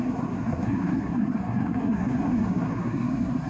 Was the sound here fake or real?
fake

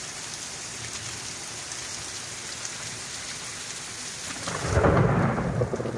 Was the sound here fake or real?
real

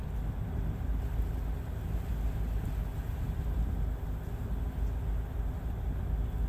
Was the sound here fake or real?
real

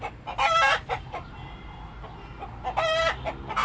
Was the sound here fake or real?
real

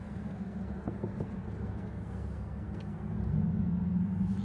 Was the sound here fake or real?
fake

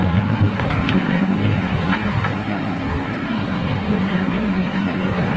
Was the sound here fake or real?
fake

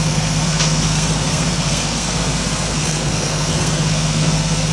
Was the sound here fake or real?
fake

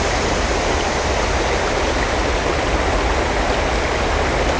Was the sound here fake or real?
real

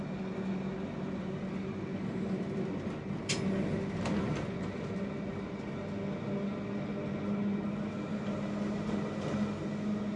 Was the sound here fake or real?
real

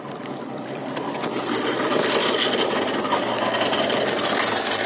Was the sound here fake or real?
real